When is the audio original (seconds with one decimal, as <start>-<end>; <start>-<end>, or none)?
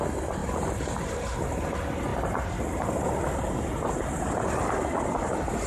0.0-5.7